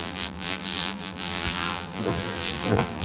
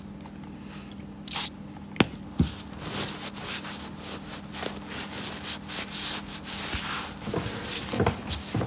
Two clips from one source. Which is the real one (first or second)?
second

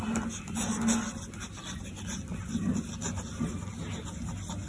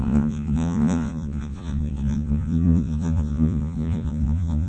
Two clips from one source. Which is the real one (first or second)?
first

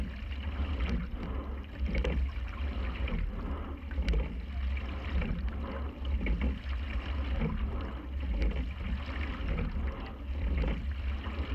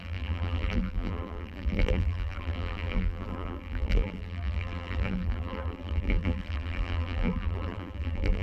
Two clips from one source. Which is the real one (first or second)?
first